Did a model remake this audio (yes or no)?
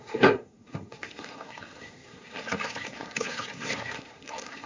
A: yes